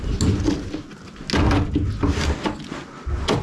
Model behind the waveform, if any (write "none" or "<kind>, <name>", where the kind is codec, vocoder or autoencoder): none